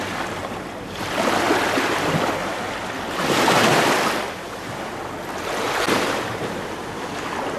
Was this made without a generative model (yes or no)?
yes